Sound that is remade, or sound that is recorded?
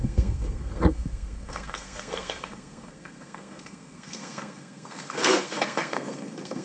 remade